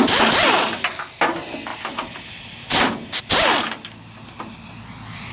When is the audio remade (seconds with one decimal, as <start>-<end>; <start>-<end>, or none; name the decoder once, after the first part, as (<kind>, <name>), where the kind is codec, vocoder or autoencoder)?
none